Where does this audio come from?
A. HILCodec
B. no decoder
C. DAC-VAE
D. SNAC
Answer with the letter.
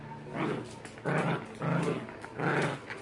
B